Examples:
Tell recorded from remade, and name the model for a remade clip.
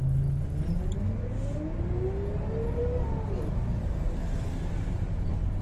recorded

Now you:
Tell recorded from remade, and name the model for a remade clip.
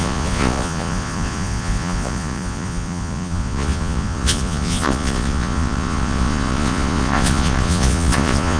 remade, vocoder, Vocos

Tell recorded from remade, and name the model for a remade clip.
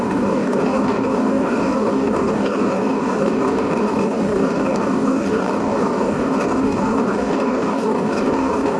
remade, codec, DAC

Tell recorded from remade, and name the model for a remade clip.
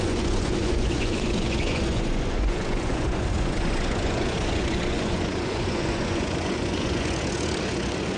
remade, vocoder, Vocos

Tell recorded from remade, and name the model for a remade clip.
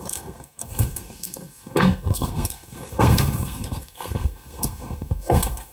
remade, codec, SNAC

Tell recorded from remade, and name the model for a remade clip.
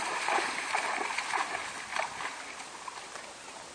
recorded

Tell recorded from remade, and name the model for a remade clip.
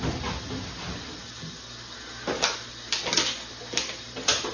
recorded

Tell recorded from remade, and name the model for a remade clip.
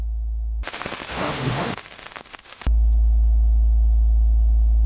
remade, autoencoder, DAC-VAE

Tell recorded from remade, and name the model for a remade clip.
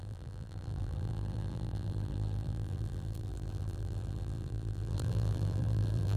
remade, vocoder, BigVGAN v2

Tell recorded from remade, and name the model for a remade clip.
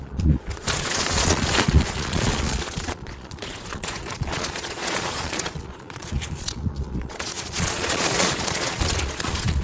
remade, vocoder, Vocos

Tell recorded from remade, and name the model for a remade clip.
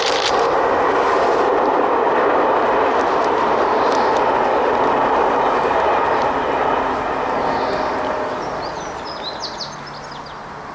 recorded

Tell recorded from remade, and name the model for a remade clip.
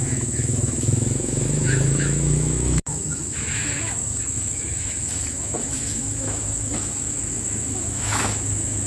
remade, autoencoder, DAC-VAE